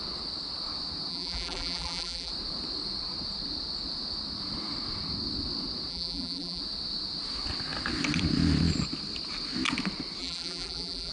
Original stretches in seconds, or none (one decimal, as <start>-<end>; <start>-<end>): 0.0-1.1; 2.3-5.9; 6.6-10.2